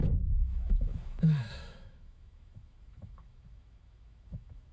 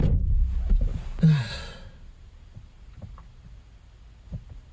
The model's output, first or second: first